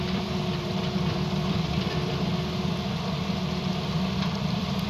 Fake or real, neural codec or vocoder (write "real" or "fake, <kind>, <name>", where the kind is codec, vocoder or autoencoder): fake, vocoder, BigVGAN v2